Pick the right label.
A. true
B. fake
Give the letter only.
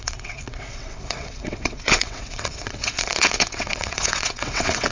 B